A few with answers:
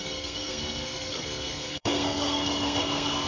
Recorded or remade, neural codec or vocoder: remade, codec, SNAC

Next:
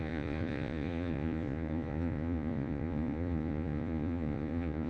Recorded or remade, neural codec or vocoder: remade, vocoder, Vocos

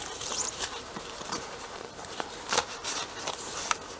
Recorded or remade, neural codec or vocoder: remade, vocoder, BigVGAN v2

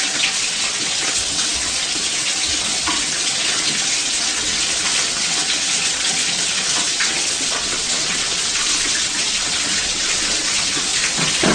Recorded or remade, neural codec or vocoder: remade, vocoder, WaveNeXt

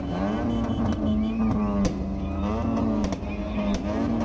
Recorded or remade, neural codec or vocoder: recorded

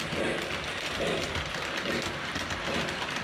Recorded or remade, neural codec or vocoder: recorded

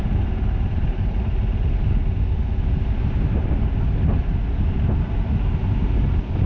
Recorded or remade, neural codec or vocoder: recorded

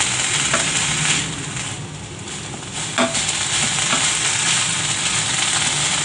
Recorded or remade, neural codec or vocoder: recorded